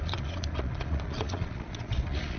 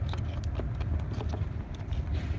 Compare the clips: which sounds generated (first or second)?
first